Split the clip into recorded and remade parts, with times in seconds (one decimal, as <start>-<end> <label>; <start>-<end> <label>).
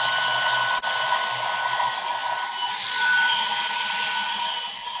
0.0-5.0 recorded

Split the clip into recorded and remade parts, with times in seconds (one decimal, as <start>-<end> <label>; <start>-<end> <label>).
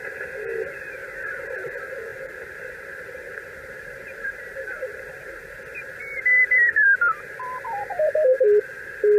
0.0-9.2 remade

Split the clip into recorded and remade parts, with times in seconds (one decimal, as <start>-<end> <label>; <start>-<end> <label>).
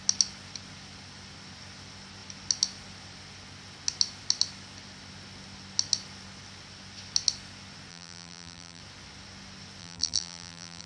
0.0-7.9 recorded; 7.9-8.8 remade; 8.8-9.8 recorded; 9.8-10.9 remade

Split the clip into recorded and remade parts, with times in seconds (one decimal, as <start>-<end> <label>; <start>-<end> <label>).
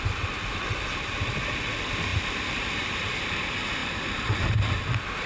0.0-2.1 recorded; 2.1-3.3 remade; 3.3-3.8 recorded; 3.8-4.8 remade; 4.8-5.3 recorded